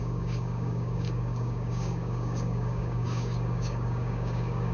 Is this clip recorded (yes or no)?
no